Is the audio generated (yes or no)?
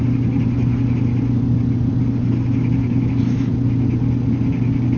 no